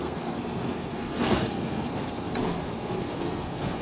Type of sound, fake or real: fake